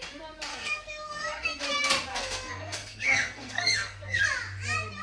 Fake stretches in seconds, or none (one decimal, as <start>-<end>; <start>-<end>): 0.5-1.6; 2.1-4.2